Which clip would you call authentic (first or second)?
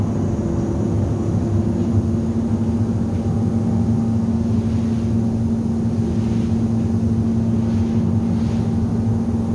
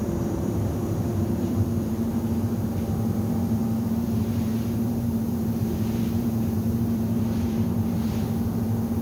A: first